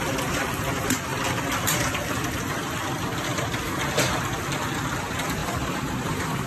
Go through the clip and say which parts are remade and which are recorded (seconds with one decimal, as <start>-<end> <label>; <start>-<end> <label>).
0.0-5.4 recorded; 5.4-6.5 remade